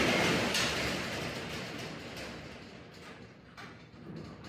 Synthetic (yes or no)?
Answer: no